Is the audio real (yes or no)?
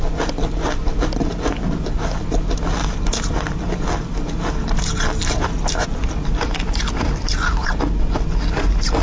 yes